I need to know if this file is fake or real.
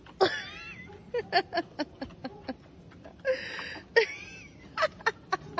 real